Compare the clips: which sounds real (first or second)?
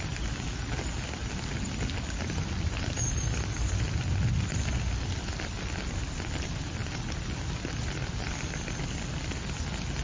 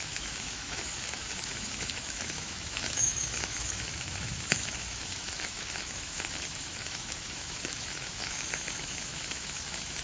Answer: first